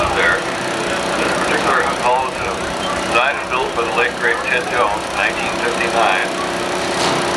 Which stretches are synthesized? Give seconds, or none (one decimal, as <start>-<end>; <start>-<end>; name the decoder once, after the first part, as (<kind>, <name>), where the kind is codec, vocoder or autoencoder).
0.4-3.1 (vocoder, BigVGAN v2); 6.2-7.0